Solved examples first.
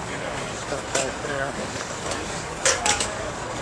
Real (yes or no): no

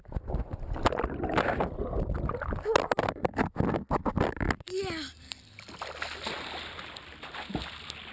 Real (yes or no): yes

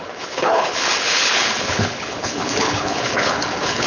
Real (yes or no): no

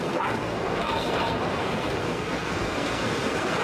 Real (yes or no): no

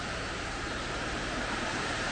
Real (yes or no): no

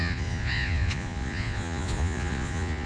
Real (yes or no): no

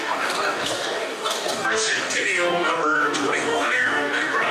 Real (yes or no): no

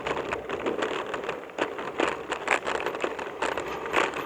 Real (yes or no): yes